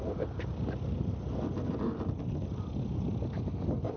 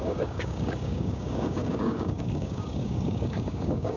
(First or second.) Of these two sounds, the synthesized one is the second